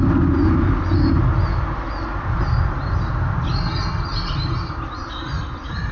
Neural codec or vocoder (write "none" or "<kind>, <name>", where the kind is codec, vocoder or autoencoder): none